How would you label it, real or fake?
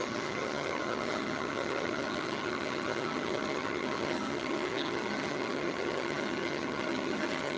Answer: fake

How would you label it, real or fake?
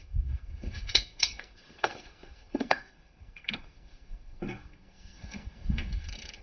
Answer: fake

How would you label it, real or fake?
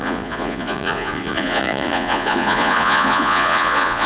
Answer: fake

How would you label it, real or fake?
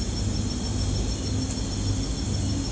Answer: real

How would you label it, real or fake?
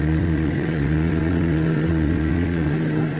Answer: fake